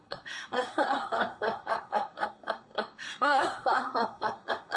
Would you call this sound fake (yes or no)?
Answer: yes